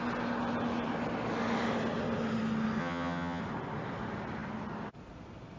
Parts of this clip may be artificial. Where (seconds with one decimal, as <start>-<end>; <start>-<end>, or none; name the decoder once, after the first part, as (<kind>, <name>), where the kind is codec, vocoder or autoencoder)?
2.8-3.4 (vocoder, HiFi-GAN)